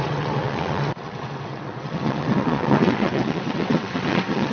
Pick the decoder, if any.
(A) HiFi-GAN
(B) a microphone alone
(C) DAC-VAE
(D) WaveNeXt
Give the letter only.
D